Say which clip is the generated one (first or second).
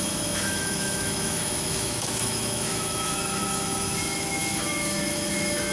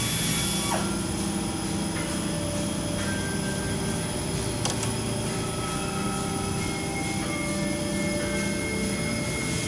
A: first